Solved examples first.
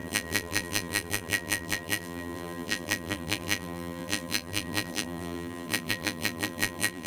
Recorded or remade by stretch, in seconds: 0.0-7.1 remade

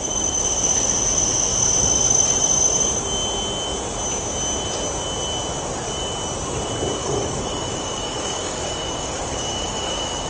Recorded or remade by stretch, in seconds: 0.0-7.0 recorded; 7.0-10.3 remade

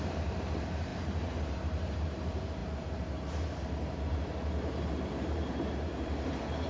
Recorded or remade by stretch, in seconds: 0.0-6.7 remade